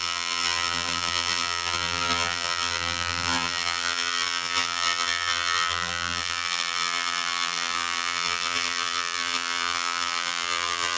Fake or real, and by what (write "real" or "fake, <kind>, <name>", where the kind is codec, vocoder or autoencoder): fake, vocoder, BigVGAN v2